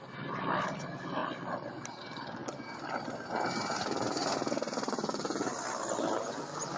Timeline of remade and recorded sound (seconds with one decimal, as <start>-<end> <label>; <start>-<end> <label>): 0.0-6.8 recorded